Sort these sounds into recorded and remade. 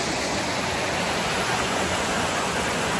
remade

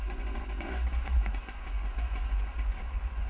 remade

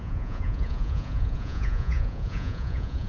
remade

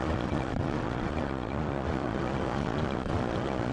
remade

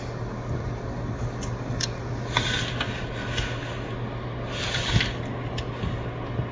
recorded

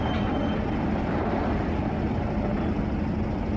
recorded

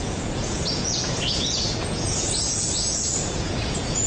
remade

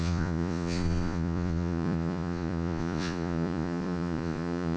remade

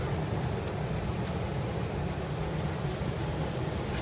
recorded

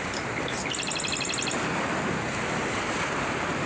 recorded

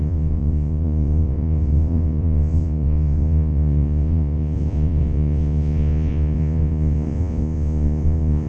remade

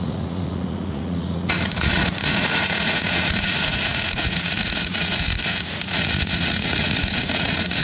remade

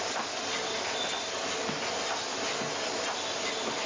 recorded